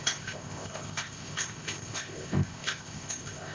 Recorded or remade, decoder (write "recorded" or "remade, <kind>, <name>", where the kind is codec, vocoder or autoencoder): remade, codec, ZipCodec